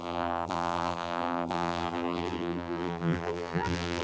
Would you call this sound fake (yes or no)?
yes